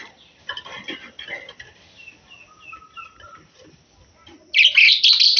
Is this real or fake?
real